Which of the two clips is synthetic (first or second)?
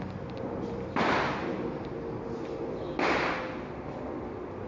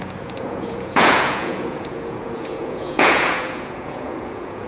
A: second